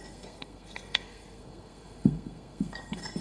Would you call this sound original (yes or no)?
no